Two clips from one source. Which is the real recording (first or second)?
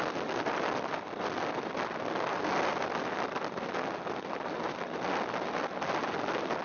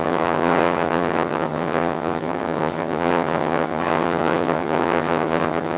first